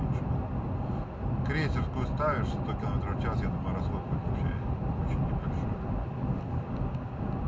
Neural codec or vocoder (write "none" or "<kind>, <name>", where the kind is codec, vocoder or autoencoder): none